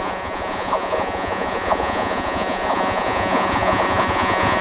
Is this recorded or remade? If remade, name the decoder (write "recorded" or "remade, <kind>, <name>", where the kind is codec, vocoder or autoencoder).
remade, vocoder, Vocos